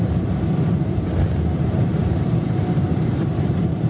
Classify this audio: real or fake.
fake